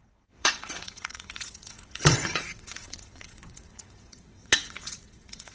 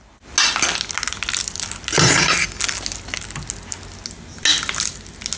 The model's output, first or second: first